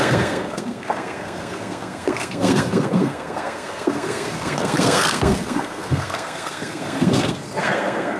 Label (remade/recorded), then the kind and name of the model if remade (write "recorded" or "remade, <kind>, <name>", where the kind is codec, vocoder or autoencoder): remade, codec, SNAC